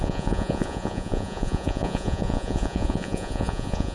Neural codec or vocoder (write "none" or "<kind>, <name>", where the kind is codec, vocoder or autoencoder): vocoder, Vocos